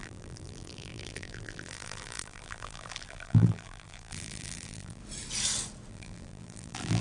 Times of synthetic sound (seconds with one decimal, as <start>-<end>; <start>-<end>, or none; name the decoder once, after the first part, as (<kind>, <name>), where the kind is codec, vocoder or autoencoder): 0.0-5.0 (vocoder, BigVGAN v2); 5.9-7.0